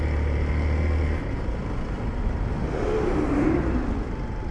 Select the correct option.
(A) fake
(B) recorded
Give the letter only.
B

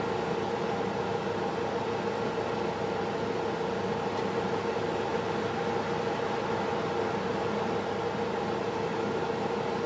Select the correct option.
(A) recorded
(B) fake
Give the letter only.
A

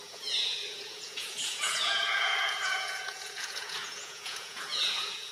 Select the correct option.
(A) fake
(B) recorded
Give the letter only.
A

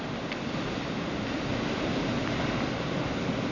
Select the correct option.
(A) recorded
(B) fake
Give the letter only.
A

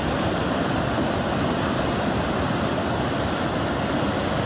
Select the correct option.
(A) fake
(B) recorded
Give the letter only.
B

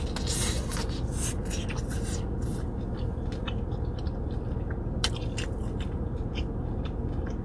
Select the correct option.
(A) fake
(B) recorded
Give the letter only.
B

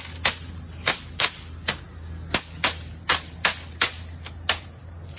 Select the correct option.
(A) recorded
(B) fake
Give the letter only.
A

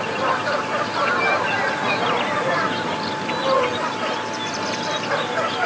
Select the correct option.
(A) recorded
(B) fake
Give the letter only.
A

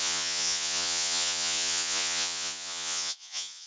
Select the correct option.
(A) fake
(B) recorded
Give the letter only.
A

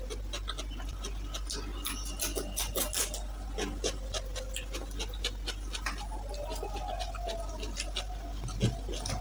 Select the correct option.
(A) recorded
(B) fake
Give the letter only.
A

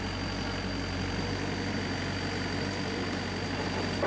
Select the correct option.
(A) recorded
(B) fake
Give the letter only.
A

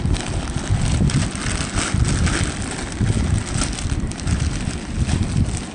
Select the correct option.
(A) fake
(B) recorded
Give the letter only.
B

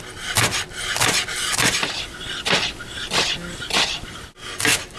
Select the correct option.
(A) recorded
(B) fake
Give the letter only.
A